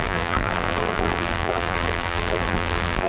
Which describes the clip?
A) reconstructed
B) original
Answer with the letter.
A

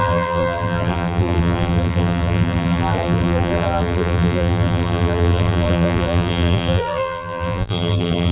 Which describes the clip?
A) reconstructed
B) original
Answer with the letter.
A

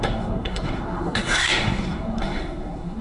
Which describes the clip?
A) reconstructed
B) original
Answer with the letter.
A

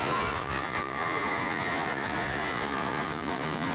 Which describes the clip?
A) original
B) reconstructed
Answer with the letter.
B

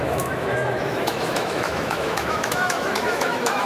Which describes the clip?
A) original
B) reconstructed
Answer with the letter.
B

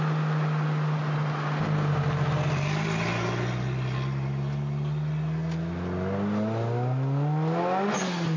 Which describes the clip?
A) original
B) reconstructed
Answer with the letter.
A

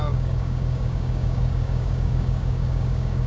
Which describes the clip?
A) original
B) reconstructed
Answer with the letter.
B